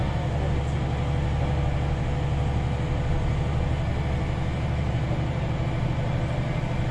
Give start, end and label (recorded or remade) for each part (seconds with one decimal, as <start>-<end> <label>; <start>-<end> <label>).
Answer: 0.0-6.9 recorded